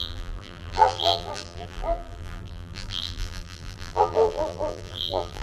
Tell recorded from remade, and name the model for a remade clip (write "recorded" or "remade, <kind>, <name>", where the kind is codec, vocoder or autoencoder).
remade, vocoder, BigVGAN v2